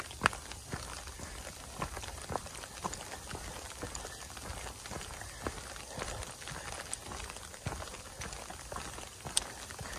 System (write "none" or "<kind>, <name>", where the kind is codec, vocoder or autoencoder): none